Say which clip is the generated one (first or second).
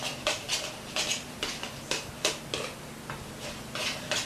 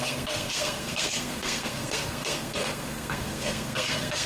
second